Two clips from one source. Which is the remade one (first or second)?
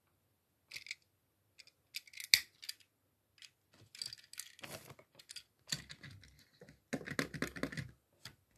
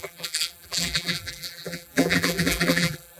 second